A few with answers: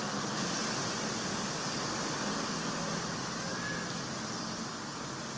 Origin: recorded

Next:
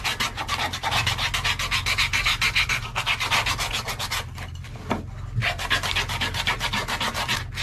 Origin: recorded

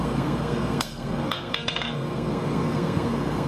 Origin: remade